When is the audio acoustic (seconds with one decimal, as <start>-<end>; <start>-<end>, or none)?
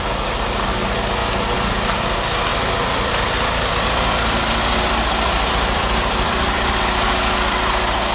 0.0-2.5; 6.7-8.1